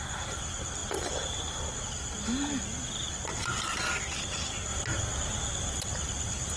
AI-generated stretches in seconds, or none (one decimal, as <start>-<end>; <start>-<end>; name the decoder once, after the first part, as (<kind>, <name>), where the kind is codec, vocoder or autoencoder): none